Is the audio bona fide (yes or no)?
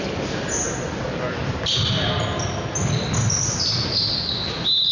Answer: yes